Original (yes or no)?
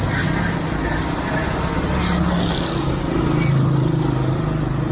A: yes